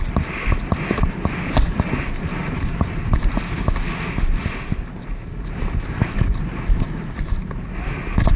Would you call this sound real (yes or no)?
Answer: yes